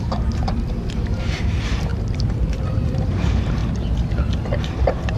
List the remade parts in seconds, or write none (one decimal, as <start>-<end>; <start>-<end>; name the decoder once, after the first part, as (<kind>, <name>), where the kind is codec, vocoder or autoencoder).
0.0-3.6 (vocoder, BigVGAN v2); 4.5-5.2